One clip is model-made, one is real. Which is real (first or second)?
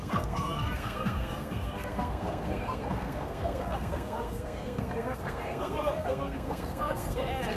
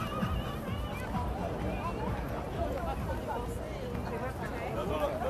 second